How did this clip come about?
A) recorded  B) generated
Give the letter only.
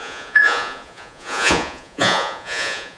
B